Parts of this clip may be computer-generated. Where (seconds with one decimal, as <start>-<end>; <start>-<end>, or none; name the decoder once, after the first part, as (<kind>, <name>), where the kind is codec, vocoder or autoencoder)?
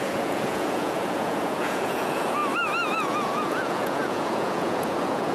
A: 0.0-2.4 (vocoder, Vocos); 2.9-5.3